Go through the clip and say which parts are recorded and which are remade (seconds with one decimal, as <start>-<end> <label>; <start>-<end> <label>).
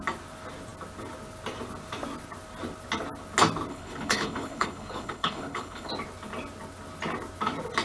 0.0-3.7 recorded; 3.7-5.9 remade; 5.9-7.8 recorded